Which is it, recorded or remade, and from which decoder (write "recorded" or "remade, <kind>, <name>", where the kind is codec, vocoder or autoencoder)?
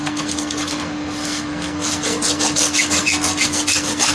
remade, codec, SNAC